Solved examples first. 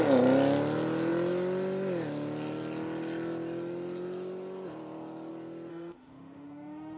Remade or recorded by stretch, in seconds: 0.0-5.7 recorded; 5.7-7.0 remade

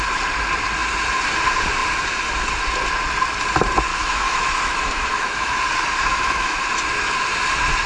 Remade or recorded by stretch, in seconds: 0.0-3.9 recorded; 3.9-5.6 remade; 5.6-6.0 recorded; 6.0-6.8 remade; 6.8-7.9 recorded

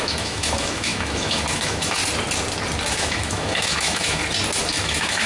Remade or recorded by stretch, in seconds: 0.0-2.0 remade; 2.0-2.9 recorded; 2.9-4.2 remade; 4.2-4.7 recorded; 4.7-5.3 remade

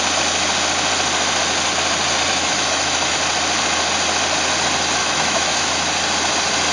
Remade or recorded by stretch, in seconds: 0.0-2.3 recorded; 2.3-3.1 remade; 3.1-5.0 recorded; 5.0-5.7 remade; 5.7-6.7 recorded